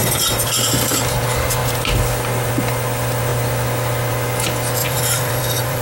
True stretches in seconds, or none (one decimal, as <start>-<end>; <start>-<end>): 1.0-4.8